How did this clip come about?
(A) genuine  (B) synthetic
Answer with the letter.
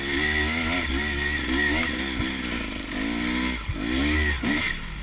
A